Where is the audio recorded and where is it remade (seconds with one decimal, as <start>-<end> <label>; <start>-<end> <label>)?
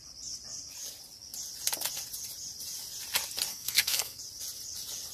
0.0-3.5 recorded; 3.5-4.2 remade; 4.2-5.1 recorded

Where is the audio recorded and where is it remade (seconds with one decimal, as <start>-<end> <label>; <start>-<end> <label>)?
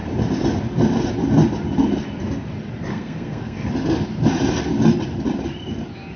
0.0-2.9 recorded; 2.9-3.7 remade; 3.7-6.2 recorded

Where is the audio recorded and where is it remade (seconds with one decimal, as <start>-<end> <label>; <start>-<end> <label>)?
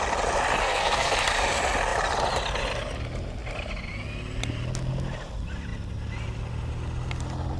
0.0-0.6 recorded; 0.6-1.1 remade; 1.1-7.6 recorded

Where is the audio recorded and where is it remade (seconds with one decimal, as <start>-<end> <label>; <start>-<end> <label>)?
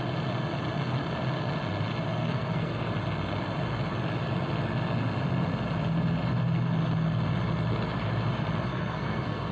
0.0-2.2 recorded; 2.2-2.9 remade; 2.9-8.7 recorded; 8.7-9.5 remade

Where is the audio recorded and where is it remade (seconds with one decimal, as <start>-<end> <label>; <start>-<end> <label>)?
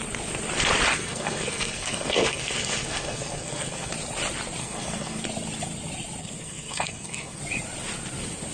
0.0-0.9 recorded; 0.9-3.9 remade; 3.9-4.6 recorded; 4.6-5.2 remade; 5.2-6.2 recorded; 6.2-7.4 remade; 7.4-8.5 recorded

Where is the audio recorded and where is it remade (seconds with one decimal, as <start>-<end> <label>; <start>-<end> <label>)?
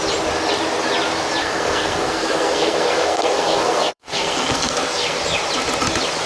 0.0-1.4 recorded; 1.4-5.2 remade; 5.2-6.3 recorded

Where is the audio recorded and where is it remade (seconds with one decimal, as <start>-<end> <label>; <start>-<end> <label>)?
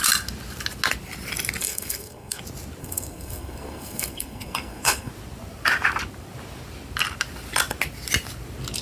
0.0-1.6 recorded; 1.6-2.4 remade; 2.4-2.8 recorded; 2.8-5.1 remade; 5.1-8.8 recorded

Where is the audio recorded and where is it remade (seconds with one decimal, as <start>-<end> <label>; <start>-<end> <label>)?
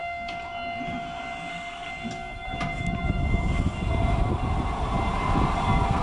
0.0-1.5 recorded; 1.5-1.9 remade; 1.9-5.5 recorded; 5.5-6.0 remade